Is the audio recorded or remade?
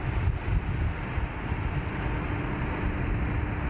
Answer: recorded